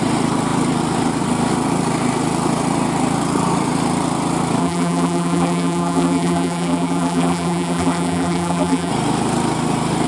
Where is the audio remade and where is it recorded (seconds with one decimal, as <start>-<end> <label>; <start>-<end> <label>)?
0.0-4.6 recorded; 4.6-8.9 remade; 8.9-10.1 recorded